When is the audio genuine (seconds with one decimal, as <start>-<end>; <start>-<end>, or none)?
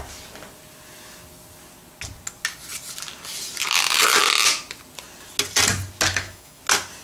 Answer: 0.0-6.1; 6.6-7.0